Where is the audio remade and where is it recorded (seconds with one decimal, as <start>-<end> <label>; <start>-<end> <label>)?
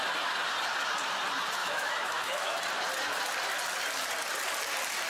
0.0-1.6 recorded; 1.6-2.5 remade; 2.5-5.1 recorded